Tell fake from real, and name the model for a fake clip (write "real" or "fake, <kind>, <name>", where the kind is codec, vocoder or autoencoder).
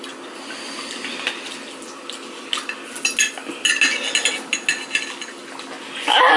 real